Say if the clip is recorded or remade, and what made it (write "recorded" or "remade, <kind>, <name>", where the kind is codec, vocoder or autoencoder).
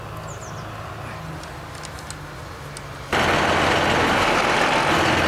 recorded